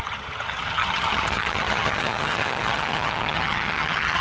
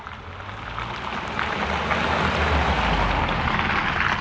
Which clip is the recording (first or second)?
second